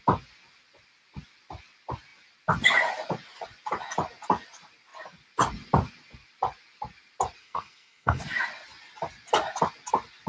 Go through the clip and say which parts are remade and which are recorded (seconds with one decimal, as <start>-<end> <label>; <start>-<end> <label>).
0.0-7.4 recorded; 7.4-8.2 remade; 8.2-10.3 recorded